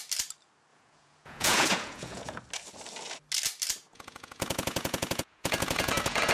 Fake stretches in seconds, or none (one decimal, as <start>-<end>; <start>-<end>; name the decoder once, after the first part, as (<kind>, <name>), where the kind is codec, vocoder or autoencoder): 0.7-2.4 (vocoder, Vocos); 3.9-6.3